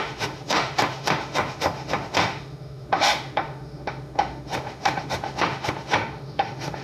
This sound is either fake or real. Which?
fake